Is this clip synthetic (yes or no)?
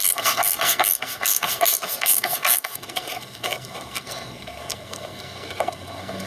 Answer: yes